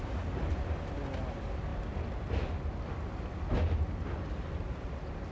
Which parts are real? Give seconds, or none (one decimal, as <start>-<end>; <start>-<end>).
0.0-5.3